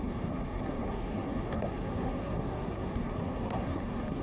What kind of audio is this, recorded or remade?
remade